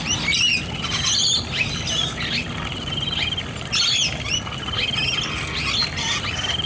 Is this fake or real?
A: real